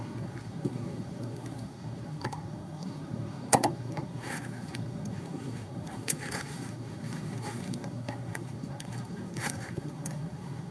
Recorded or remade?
remade